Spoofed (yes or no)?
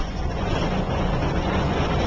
yes